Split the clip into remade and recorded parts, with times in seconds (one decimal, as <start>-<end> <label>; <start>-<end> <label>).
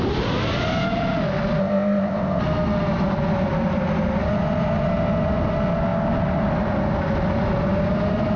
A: 0.0-1.6 recorded; 1.6-2.4 remade; 2.4-8.4 recorded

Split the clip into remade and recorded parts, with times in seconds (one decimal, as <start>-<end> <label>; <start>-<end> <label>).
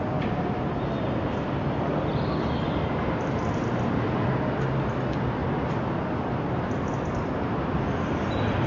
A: 0.0-8.7 recorded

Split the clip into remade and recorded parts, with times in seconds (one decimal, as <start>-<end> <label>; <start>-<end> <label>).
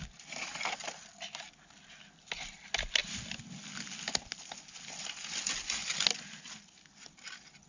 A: 0.0-7.7 recorded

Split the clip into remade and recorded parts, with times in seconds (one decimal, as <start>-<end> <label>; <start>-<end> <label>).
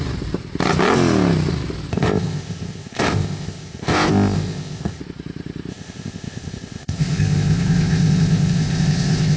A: 0.0-1.9 recorded; 1.9-5.0 remade; 5.0-5.7 recorded; 5.7-9.4 remade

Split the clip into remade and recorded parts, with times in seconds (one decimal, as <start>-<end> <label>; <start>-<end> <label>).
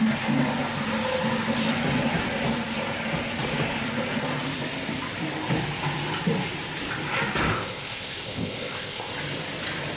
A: 0.0-7.5 recorded; 7.5-9.1 remade; 9.1-10.0 recorded